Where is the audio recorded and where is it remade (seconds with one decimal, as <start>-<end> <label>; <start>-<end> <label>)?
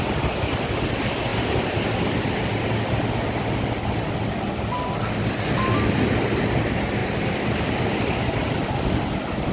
0.0-7.0 recorded; 7.0-8.2 remade; 8.2-9.5 recorded